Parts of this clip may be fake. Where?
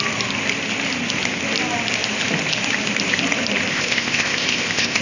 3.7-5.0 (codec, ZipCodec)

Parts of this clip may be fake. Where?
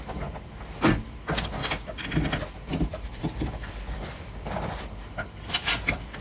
none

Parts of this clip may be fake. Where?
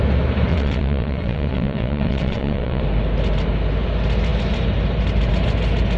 0.5-2.8 (vocoder, WaveNeXt)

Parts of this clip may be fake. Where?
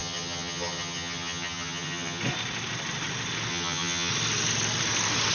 0.0-2.2 (vocoder, HiFi-GAN); 3.5-4.1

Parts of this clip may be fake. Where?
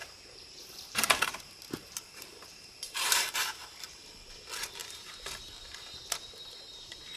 0.0-4.1 (vocoder, BigVGAN v2)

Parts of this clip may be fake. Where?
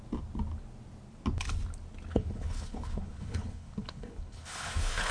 2.1-5.1 (codec, HILCodec)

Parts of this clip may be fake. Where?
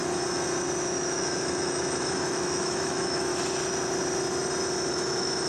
0.8-3.3 (autoencoder, DAC-VAE); 4.9-5.5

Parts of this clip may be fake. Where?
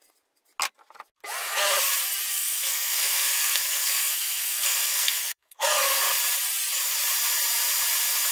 2.3-6.0 (codec, SNAC)